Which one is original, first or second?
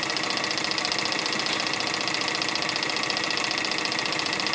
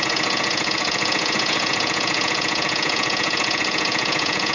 first